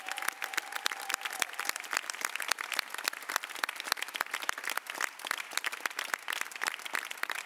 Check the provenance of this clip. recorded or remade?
recorded